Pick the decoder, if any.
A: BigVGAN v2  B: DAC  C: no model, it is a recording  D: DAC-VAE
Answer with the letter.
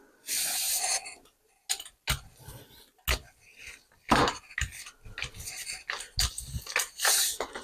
C